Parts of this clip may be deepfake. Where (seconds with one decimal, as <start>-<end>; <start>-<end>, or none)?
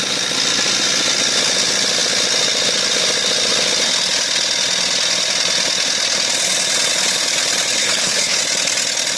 7.8-8.4